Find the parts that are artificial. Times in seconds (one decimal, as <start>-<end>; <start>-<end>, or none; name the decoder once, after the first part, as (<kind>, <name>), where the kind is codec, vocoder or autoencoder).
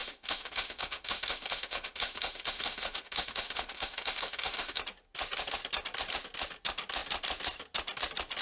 0.0-4.8 (autoencoder, DAC-VAE)